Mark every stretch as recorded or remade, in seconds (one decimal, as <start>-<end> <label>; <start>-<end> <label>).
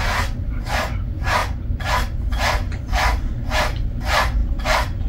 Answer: 0.0-5.1 recorded